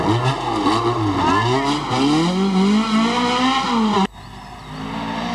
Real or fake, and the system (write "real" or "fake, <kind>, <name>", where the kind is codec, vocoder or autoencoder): real